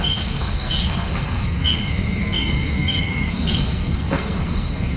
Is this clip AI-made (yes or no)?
yes